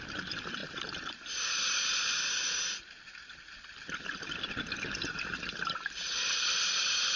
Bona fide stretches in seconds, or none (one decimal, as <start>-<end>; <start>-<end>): 0.0-7.2